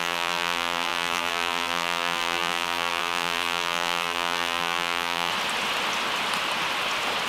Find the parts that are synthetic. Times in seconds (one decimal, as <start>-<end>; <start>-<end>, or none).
0.0-5.3